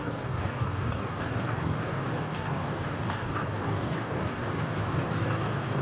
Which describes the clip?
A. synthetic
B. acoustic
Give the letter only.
A